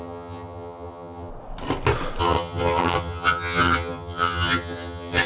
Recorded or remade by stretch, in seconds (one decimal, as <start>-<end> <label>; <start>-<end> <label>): 0.0-1.3 remade; 1.3-2.2 recorded; 2.2-5.3 remade